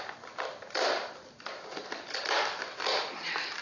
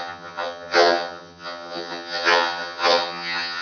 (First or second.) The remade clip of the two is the second